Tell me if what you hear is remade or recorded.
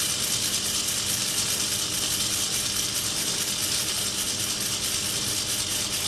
recorded